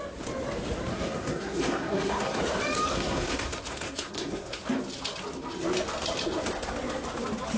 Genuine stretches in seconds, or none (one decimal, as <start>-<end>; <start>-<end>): 0.0-0.9; 2.4-2.9; 4.6-7.6